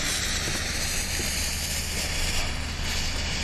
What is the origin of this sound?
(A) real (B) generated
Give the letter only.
A